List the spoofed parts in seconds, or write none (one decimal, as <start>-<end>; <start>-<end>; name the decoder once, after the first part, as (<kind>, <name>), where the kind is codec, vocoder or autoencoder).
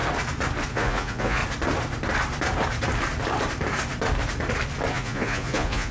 0.7-1.4 (vocoder, Vocos); 4.9-5.9